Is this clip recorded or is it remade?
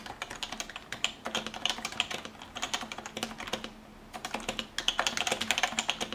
recorded